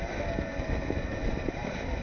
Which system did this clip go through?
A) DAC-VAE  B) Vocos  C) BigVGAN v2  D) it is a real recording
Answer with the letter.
D